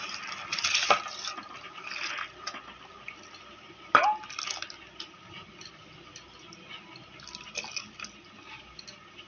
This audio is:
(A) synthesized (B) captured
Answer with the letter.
B